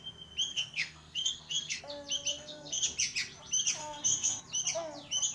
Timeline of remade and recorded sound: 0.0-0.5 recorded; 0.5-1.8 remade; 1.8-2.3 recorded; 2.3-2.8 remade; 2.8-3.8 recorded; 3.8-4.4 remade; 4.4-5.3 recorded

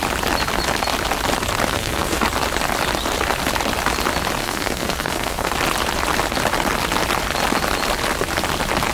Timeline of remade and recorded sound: 0.0-1.7 recorded; 1.7-2.2 remade; 2.2-4.4 recorded; 4.4-5.5 remade; 5.5-8.9 recorded

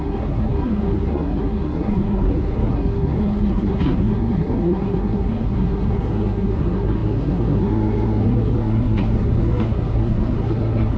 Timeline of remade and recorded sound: 0.0-11.0 remade